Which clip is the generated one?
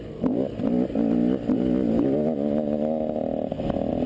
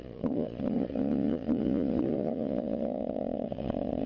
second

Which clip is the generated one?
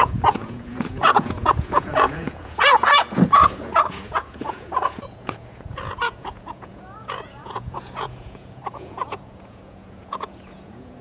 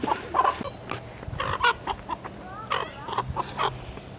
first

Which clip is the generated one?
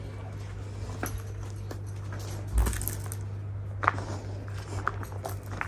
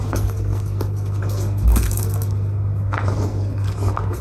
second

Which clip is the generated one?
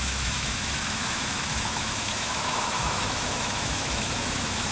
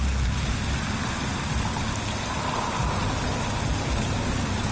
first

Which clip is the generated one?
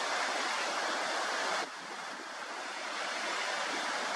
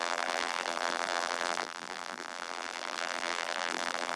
second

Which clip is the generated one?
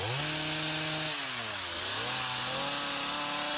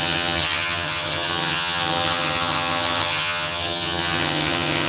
second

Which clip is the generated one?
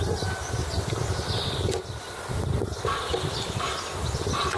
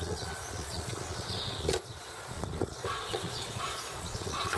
second